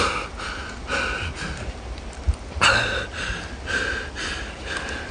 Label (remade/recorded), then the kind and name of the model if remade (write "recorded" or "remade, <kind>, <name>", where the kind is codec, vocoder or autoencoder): recorded